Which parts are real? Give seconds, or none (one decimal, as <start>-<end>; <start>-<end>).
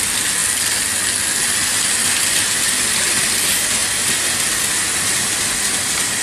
0.0-6.2